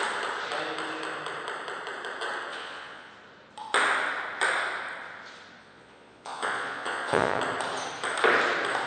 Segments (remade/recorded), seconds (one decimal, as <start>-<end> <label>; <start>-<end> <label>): 0.0-2.5 recorded; 2.5-3.1 remade; 3.1-5.6 recorded; 5.6-7.4 remade; 7.4-8.9 recorded